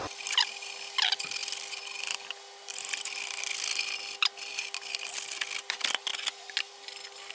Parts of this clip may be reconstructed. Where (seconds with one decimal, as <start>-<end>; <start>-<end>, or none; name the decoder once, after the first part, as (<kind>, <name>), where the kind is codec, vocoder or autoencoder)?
none